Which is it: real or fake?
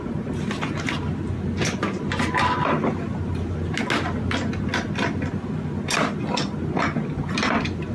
real